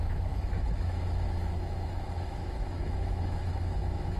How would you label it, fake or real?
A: fake